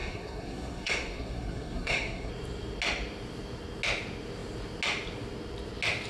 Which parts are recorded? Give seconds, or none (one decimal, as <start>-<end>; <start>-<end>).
2.3-6.1

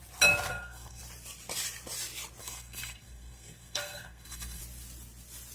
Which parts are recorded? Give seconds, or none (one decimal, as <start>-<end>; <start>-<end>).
0.0-0.5; 1.0-2.4; 4.6-5.5

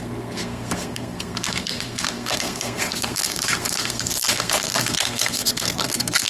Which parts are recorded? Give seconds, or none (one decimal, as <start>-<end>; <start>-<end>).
none

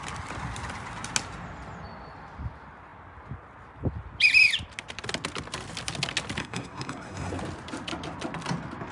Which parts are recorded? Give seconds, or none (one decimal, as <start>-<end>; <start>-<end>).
0.0-6.4; 7.3-8.9

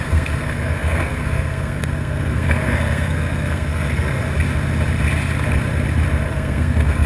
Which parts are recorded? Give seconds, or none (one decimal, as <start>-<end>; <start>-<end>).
4.2-6.3